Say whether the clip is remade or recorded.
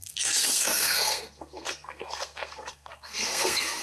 remade